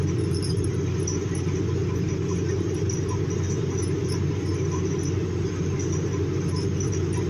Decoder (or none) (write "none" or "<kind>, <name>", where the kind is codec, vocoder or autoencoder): none